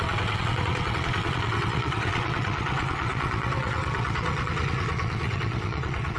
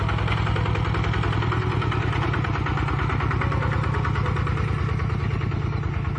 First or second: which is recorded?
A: second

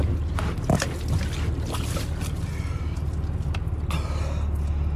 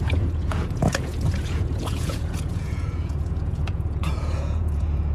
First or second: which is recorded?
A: first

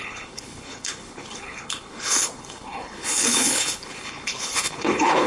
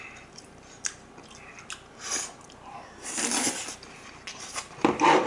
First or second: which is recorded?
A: second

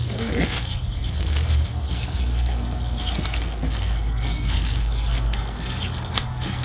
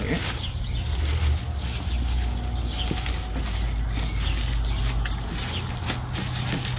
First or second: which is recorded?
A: second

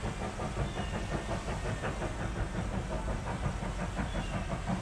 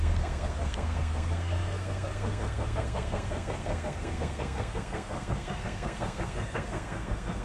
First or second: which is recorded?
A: first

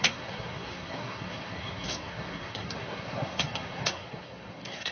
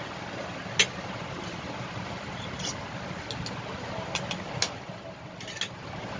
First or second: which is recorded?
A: second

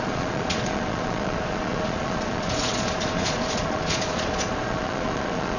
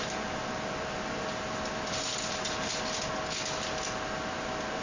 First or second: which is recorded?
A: second